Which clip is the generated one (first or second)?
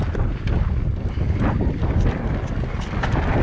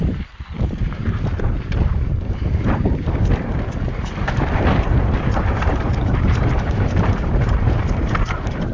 second